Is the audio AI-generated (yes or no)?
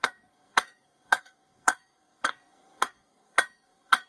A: yes